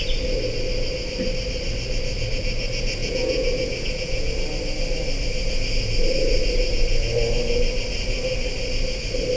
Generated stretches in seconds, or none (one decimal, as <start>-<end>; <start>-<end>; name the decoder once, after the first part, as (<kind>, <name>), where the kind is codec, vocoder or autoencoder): 3.0-4.3 (vocoder, Vocos)